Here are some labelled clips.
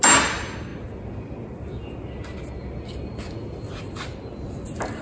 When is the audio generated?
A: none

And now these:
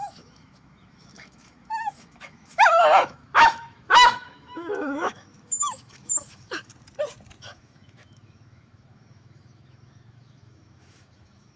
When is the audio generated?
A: 0.0-6.7 (autoencoder, DAC-VAE); 7.4-11.6

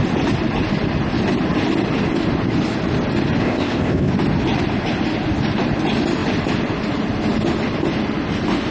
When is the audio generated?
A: 3.4-4.1 (codec, ZipCodec)

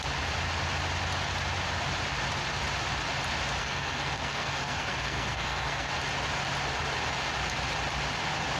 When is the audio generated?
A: 3.6-5.9 (codec, SNAC)

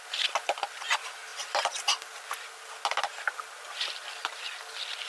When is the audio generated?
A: none